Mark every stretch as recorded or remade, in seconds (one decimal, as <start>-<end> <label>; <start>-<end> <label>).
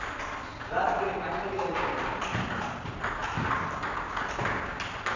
0.0-5.2 recorded